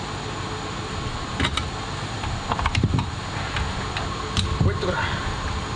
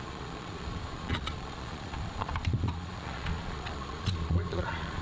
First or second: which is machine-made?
second